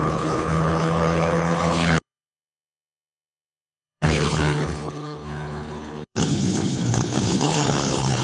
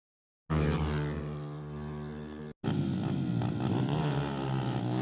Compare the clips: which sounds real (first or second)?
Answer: second